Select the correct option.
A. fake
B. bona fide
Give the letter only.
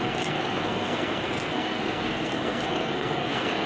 A